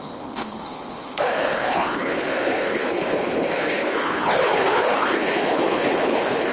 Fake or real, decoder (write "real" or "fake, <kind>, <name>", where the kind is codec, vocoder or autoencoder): fake, codec, HILCodec